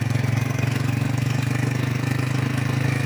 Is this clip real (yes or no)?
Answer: no